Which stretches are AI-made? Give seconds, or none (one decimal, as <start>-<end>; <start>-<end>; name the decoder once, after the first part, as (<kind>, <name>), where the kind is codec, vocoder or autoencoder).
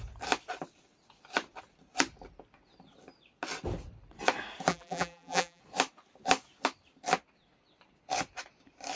4.7-5.6 (vocoder, BigVGAN v2)